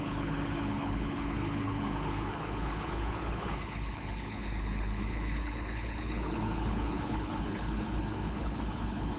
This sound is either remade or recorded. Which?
remade